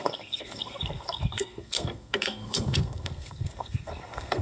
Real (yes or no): no